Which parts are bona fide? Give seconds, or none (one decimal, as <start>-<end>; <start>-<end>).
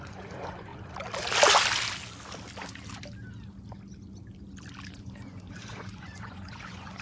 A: 0.7-4.9